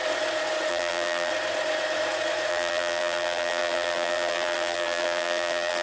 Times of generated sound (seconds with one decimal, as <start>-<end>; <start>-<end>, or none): 0.7-1.3; 2.5-5.8